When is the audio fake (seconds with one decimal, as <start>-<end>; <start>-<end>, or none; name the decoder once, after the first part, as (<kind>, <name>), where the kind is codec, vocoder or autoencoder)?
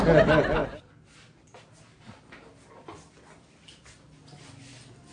none